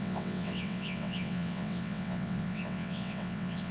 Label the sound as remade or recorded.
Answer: remade